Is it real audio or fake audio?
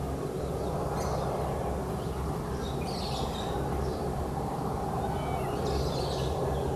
real